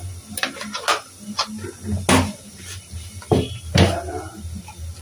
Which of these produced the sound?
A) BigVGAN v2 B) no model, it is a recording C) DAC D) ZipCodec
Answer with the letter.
B